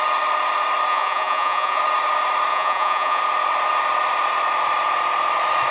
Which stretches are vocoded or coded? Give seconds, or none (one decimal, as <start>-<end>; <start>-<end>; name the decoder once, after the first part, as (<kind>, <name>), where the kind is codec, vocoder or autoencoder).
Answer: 0.9-1.8 (vocoder, Vocos); 2.5-3.2